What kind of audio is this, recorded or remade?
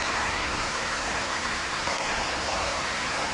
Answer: remade